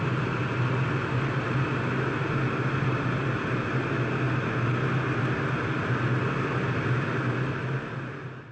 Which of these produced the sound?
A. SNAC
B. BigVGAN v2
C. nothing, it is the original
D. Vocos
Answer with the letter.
C